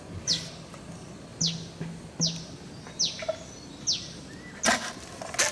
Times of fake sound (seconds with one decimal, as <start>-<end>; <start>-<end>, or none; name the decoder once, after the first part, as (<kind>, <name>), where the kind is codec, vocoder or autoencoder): none